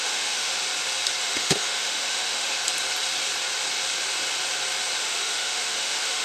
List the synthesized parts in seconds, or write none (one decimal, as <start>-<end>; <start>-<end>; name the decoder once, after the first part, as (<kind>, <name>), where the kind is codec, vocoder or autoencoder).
0.0-0.5 (autoencoder, DAC-VAE); 1.2-2.6; 5.0-6.2